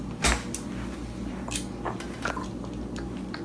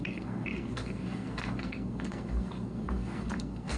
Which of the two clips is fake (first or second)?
second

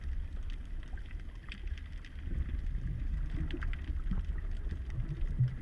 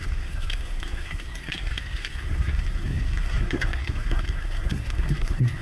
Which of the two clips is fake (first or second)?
second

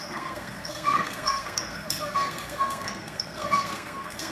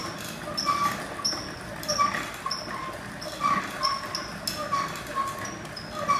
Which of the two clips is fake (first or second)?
first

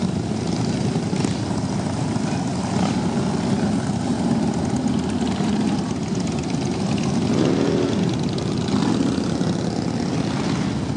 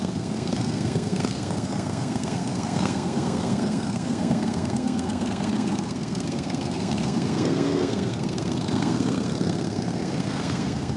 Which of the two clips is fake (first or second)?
second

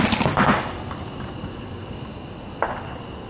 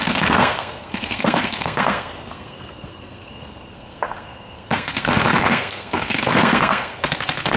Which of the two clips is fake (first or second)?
second